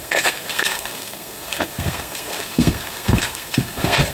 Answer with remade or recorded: remade